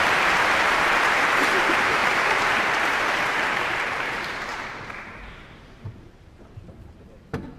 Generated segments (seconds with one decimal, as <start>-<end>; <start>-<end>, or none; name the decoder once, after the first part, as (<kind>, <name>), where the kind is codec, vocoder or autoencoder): 0.0-4.5 (vocoder, BigVGAN v2); 5.0-7.6